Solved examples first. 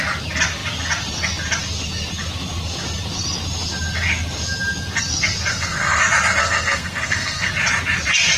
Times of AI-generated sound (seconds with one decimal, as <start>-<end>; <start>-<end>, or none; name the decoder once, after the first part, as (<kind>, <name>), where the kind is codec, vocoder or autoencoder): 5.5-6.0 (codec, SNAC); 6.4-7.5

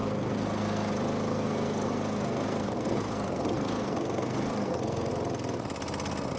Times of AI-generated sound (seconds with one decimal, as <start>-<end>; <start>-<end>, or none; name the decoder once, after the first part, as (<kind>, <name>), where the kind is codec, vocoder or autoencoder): 0.0-0.9 (codec, SNAC); 1.3-5.1

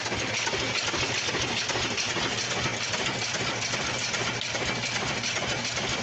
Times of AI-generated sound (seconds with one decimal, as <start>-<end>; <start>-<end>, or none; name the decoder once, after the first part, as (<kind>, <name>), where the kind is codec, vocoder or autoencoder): none